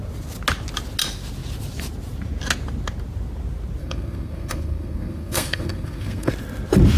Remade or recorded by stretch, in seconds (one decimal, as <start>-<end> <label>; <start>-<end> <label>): 0.0-3.8 recorded; 3.8-6.3 remade; 6.3-7.0 recorded